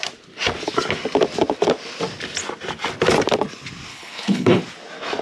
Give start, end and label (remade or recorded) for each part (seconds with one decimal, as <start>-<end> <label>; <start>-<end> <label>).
0.0-3.9 recorded; 3.9-4.6 remade; 4.6-5.2 recorded

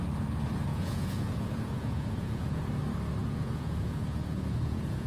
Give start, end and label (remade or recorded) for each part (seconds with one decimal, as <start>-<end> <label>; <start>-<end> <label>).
0.0-0.7 recorded; 0.7-2.7 remade; 2.7-3.2 recorded; 3.2-5.1 remade